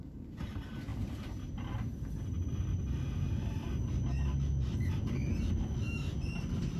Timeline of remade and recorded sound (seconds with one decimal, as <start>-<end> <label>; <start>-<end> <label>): 0.0-6.8 recorded

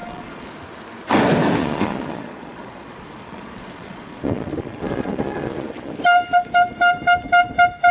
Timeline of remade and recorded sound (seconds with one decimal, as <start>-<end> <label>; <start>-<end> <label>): 0.0-0.5 remade; 0.5-1.6 recorded; 1.6-5.9 remade; 5.9-7.9 recorded

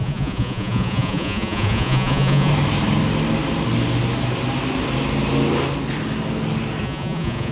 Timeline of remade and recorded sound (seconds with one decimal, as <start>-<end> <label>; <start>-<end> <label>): 0.0-2.5 remade; 2.5-6.8 recorded; 6.8-7.5 remade

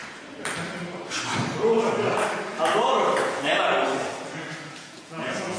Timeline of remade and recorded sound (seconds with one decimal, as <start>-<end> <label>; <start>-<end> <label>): 0.0-3.3 recorded; 3.3-3.7 remade; 3.7-4.7 recorded; 4.7-5.6 remade

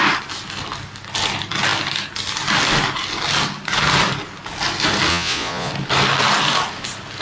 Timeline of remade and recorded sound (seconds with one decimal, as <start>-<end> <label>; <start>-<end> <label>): 0.0-5.1 recorded; 5.1-5.7 remade; 5.7-7.2 recorded